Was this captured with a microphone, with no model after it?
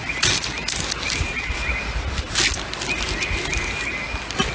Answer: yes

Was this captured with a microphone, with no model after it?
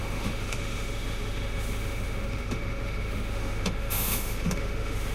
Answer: no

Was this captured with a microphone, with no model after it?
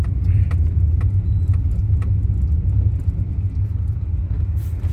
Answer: yes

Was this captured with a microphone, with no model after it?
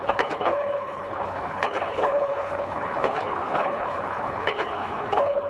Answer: no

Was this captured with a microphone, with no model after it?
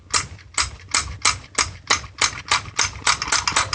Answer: yes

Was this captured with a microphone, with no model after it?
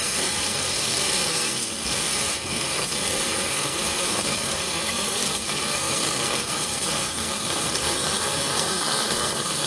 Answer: no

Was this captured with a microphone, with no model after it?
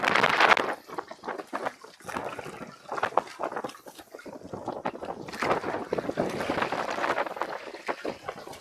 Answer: yes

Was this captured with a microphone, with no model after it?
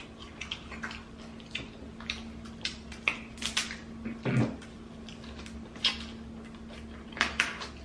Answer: yes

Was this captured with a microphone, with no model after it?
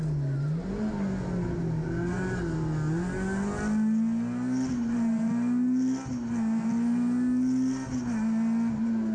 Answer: yes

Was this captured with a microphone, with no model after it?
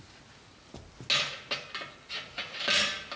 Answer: yes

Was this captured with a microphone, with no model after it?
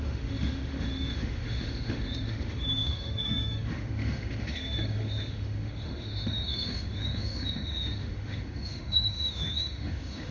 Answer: no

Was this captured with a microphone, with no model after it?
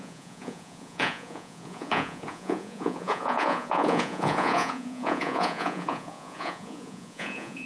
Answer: no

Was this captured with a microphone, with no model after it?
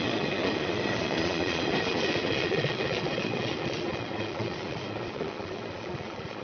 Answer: no